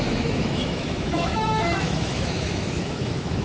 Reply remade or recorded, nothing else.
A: remade